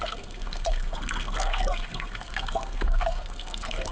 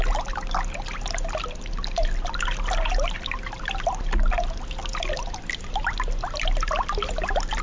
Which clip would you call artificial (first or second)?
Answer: first